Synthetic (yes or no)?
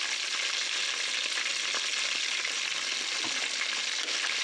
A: no